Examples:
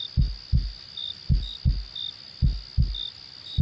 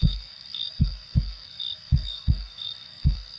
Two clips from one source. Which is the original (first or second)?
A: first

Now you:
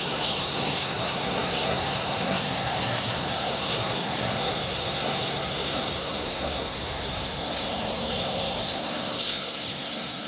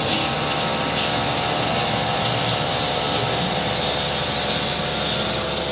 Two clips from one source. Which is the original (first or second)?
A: second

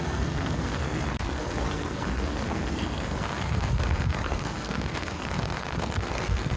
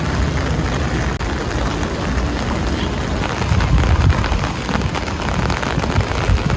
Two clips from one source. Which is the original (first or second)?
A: second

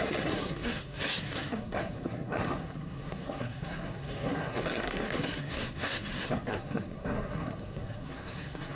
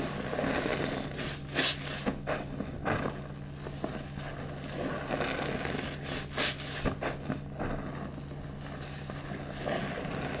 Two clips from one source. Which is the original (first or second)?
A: second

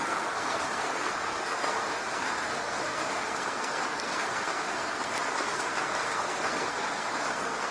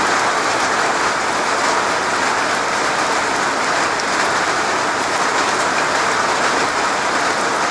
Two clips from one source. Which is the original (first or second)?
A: second